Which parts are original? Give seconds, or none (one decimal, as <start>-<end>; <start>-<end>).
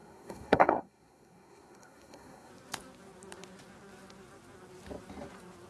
2.5-5.7